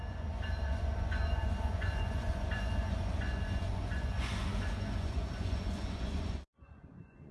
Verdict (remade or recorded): remade